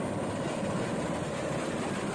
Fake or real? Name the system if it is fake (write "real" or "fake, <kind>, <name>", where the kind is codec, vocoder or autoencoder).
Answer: real